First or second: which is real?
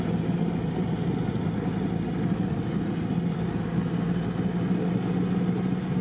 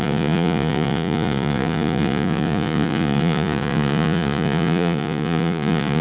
first